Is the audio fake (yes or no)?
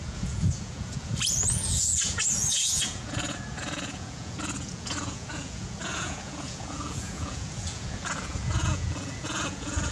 yes